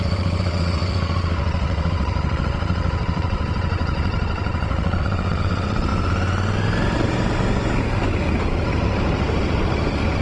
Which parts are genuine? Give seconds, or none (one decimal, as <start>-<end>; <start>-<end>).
5.9-10.2